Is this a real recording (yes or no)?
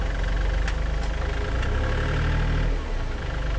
yes